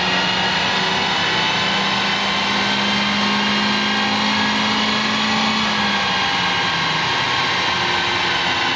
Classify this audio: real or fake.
real